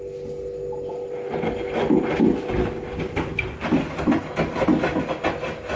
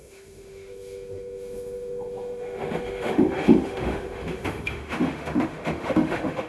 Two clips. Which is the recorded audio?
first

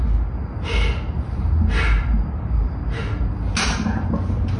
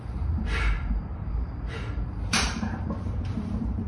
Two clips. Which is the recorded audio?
first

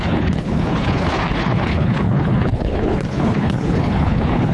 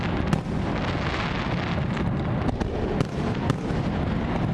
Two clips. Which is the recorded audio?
second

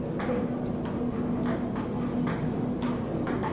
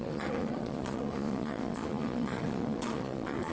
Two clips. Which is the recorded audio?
first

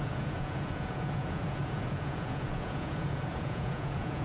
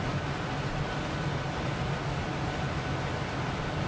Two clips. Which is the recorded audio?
second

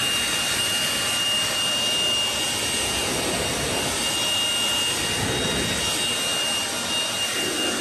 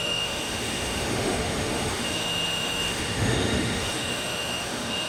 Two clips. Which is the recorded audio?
first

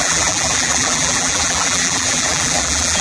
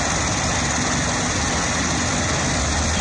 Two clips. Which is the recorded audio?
second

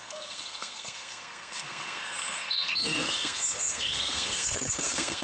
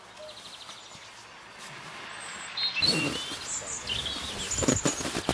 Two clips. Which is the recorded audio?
second